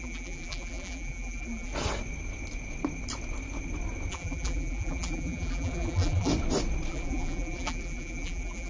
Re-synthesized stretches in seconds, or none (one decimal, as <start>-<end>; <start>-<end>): 0.0-1.7; 4.1-6.3; 6.9-8.7